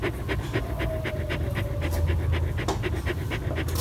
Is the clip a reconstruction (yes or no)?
no